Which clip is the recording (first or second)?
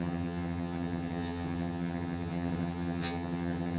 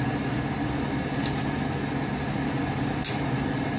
second